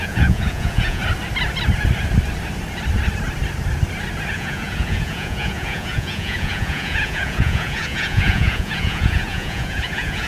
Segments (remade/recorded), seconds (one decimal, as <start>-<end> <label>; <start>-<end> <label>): 0.0-1.0 remade; 1.0-4.3 recorded; 4.3-10.3 remade

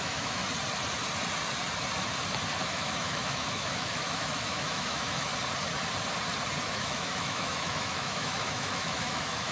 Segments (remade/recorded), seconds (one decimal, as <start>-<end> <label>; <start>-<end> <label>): 0.0-0.4 remade; 0.4-2.6 recorded; 2.6-5.3 remade; 5.3-6.6 recorded; 6.6-9.5 remade